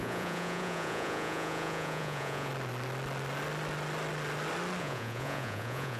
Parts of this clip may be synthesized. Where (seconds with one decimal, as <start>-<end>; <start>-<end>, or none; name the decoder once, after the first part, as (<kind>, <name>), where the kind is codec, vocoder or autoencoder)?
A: 0.0-2.5 (vocoder, Vocos); 4.8-6.0